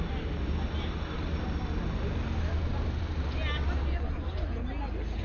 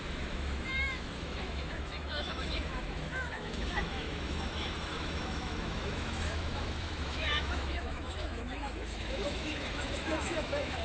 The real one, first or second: first